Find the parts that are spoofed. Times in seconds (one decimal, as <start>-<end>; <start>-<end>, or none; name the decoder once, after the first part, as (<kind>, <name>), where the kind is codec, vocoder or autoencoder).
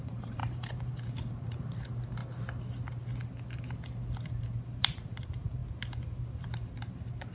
0.0-2.2 (vocoder, BigVGAN v2); 4.2-5.6; 6.3-7.3